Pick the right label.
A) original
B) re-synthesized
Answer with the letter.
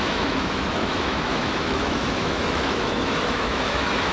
B